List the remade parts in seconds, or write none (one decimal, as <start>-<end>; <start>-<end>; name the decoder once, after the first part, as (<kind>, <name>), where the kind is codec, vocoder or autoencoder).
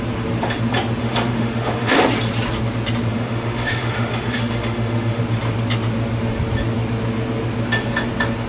1.0-2.0 (autoencoder, DAC-VAE); 3.1-5.2